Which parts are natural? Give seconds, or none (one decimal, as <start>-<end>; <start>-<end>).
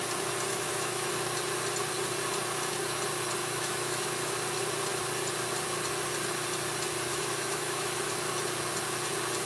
0.0-0.5; 1.1-3.4; 4.3-7.1; 8.1-9.5